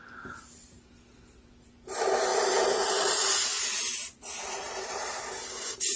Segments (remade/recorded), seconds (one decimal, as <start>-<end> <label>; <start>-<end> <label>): 0.0-2.3 recorded; 2.3-3.1 remade; 3.1-3.5 recorded; 3.5-5.2 remade; 5.2-6.0 recorded

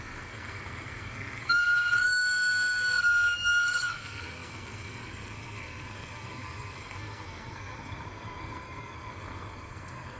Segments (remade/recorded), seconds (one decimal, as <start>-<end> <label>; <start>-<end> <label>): 0.0-10.2 remade

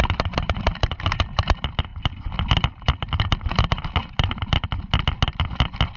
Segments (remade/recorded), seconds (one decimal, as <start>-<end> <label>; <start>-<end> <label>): 0.0-4.0 recorded; 4.0-4.9 remade; 4.9-6.0 recorded

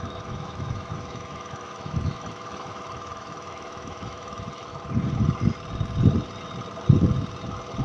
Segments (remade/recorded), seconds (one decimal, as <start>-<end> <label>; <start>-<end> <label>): 0.0-4.7 remade; 4.7-7.8 recorded

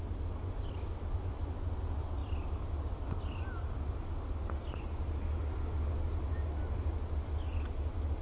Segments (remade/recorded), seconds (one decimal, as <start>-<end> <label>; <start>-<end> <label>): 0.0-8.2 recorded

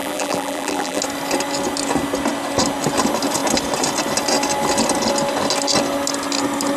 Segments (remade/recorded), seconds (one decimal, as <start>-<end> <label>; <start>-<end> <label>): 0.0-1.0 remade; 1.0-6.8 recorded

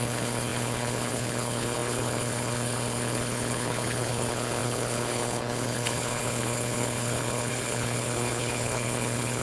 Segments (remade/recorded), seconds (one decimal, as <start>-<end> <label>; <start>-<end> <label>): 0.0-9.4 remade

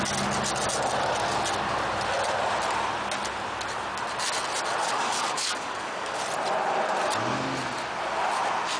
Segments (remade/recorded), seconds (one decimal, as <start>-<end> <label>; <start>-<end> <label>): 0.0-4.8 recorded; 4.8-6.2 remade; 6.2-8.8 recorded